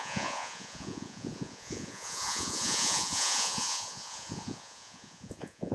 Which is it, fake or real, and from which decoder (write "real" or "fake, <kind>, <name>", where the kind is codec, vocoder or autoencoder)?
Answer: fake, vocoder, Vocos